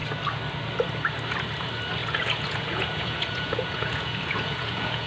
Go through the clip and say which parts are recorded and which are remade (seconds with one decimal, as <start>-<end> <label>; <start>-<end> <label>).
0.0-2.0 recorded; 2.0-5.1 remade